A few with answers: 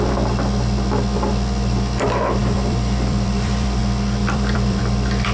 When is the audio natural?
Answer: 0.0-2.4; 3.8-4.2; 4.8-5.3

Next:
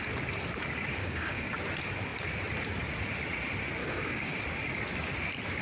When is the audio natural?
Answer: 0.0-1.0; 1.6-3.8; 4.4-5.6

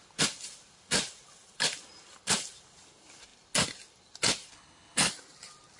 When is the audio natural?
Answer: 0.0-4.5; 5.1-5.8

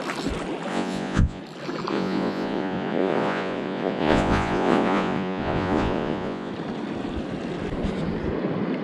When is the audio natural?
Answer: 0.0-0.7; 1.4-1.9; 6.5-8.8

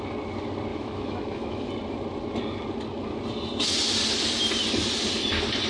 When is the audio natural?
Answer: 0.0-0.7; 1.7-5.7